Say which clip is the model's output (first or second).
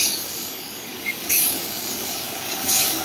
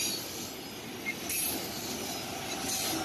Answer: first